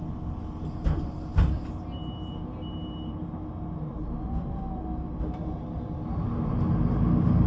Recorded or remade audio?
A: recorded